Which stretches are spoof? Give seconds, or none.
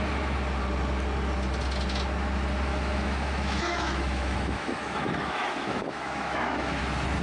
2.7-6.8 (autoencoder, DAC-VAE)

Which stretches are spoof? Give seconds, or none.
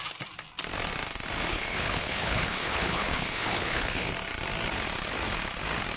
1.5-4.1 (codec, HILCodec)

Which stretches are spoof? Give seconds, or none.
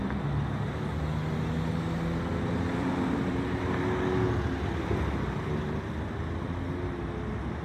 2.3-3.8 (vocoder, BigVGAN v2)